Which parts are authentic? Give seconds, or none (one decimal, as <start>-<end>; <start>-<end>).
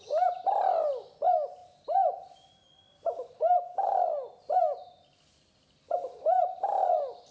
0.0-7.3